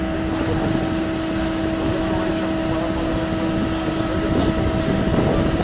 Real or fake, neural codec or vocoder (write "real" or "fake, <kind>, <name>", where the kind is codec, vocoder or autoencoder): real